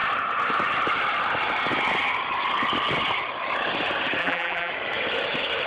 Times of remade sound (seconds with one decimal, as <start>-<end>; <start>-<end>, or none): 4.2-4.7